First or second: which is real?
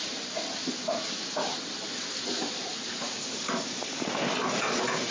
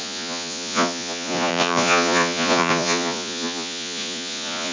first